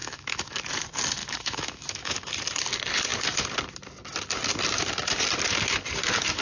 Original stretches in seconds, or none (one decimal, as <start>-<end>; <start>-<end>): 0.6-1.2; 2.3-6.4